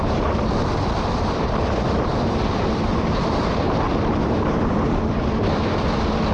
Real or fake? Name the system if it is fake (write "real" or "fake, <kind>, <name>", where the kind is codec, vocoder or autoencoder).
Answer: fake, vocoder, BigVGAN v2